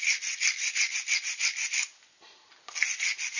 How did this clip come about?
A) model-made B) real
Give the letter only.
B